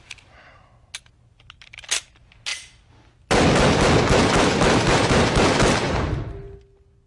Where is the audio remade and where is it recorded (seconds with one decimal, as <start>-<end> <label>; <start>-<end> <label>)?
0.0-7.1 recorded